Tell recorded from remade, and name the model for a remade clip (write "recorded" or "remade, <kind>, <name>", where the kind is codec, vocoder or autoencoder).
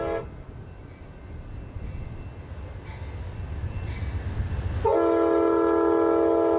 recorded